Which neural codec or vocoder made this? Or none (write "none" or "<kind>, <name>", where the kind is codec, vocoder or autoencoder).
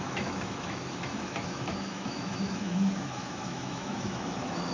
autoencoder, DAC-VAE